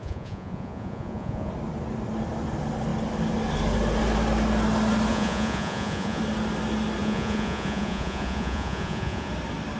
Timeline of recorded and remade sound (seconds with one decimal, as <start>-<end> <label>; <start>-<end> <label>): 0.0-1.5 remade; 1.5-5.1 recorded; 5.1-6.2 remade; 6.2-7.0 recorded; 7.0-9.3 remade; 9.3-9.8 recorded